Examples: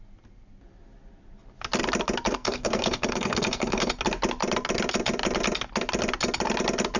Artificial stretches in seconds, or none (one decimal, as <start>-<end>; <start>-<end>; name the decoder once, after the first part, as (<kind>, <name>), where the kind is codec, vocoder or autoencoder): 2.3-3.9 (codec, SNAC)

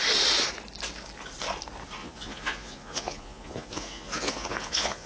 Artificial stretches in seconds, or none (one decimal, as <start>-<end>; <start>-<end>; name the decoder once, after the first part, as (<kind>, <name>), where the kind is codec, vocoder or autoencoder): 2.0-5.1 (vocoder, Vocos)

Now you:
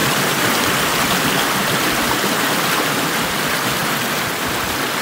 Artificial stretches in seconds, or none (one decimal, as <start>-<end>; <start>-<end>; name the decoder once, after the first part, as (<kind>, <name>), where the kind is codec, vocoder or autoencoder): none